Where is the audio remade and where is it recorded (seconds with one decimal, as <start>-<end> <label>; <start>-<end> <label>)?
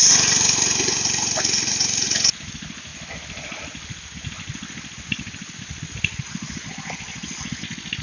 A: 0.0-8.0 recorded